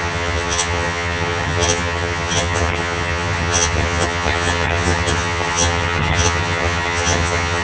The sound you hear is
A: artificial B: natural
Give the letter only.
A